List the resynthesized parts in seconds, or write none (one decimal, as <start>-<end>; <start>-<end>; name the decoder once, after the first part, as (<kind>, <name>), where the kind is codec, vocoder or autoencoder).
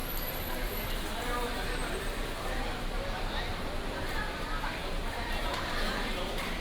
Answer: 0.0-1.2 (vocoder, BigVGAN v2); 3.5-4.2; 4.8-6.6